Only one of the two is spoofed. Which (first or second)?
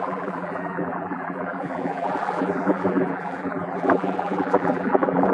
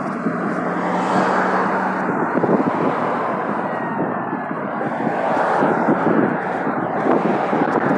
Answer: first